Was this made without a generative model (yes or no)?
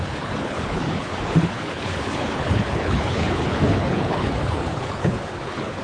no